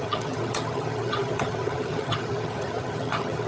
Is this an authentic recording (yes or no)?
no